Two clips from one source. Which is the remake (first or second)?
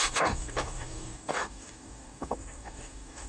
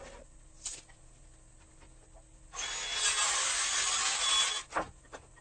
first